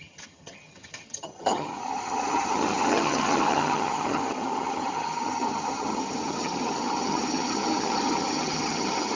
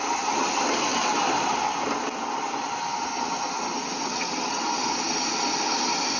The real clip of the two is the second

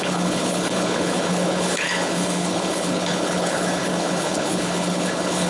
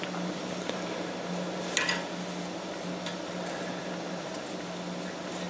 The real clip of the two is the second